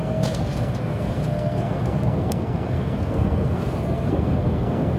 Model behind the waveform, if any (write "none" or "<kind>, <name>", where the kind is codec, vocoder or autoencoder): codec, SNAC